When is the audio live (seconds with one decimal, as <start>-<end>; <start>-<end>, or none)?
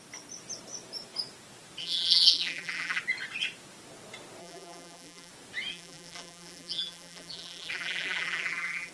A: 0.0-1.8; 3.0-4.4; 5.3-5.7